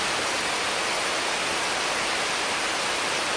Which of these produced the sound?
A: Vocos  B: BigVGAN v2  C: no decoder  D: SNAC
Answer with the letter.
C